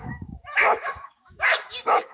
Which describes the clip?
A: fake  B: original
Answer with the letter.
A